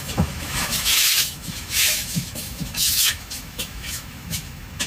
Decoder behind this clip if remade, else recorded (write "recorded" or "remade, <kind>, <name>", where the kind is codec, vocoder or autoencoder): remade, autoencoder, DAC-VAE